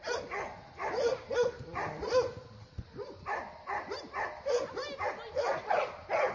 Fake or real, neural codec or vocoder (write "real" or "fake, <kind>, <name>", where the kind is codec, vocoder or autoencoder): real